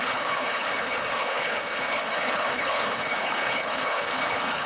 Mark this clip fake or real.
fake